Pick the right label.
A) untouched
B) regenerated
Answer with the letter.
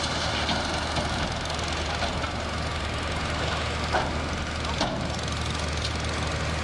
A